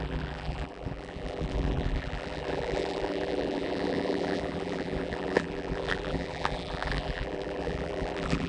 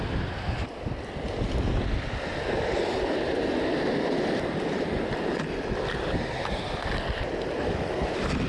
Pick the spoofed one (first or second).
first